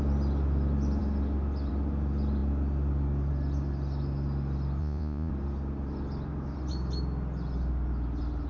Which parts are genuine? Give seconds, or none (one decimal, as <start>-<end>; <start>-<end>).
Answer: 0.0-4.8; 5.3-8.5